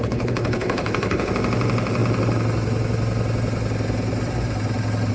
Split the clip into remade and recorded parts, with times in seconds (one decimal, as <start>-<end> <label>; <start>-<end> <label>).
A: 0.0-1.3 remade; 1.3-5.1 recorded